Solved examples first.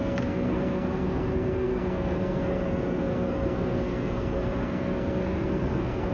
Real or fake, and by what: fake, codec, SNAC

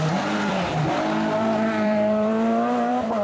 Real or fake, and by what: fake, vocoder, BigVGAN v2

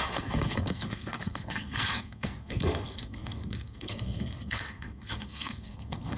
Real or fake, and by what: fake, codec, SNAC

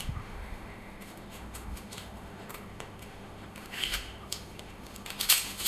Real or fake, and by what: fake, autoencoder, DAC-VAE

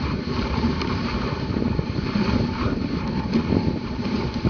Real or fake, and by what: fake, vocoder, BigVGAN v2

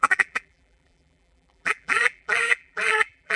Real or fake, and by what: fake, vocoder, BigVGAN v2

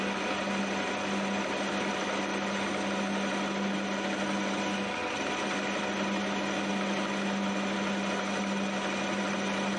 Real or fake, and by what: real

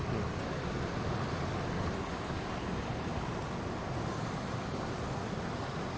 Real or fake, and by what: real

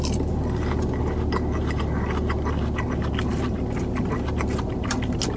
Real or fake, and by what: real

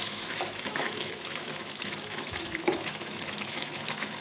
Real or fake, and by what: fake, autoencoder, DAC-VAE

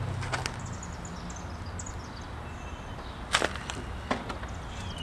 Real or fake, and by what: real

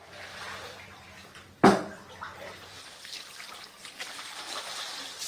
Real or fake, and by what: real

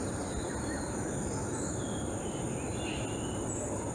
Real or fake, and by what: real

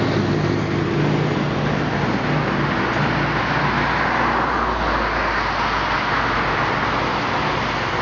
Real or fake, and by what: real